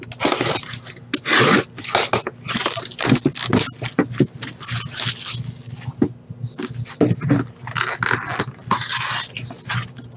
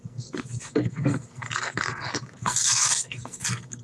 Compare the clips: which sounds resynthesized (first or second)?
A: second